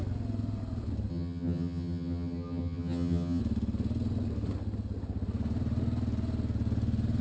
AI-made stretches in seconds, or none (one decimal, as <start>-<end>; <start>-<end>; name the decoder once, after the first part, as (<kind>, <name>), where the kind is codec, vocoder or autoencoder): 1.1-3.4 (vocoder, HiFi-GAN)